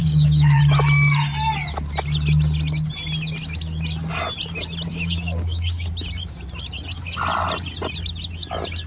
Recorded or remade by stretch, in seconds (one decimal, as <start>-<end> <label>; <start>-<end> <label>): 0.0-0.6 remade; 0.6-4.9 recorded; 4.9-5.9 remade; 5.9-8.9 recorded